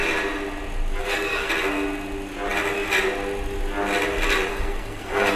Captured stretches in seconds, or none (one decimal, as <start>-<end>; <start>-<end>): 0.0-1.0; 1.5-4.5

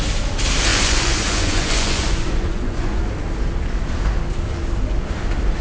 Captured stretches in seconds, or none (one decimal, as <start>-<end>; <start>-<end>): 0.0-0.7; 3.0-5.6

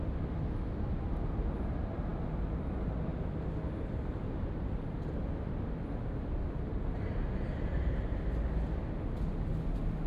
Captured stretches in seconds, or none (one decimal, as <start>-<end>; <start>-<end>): 0.0-10.1

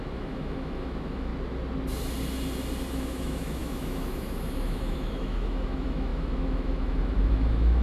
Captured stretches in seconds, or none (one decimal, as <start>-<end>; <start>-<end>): 1.3-2.9

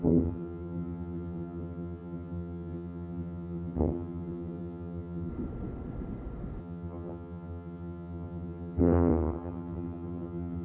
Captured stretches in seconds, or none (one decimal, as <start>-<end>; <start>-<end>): 5.3-6.6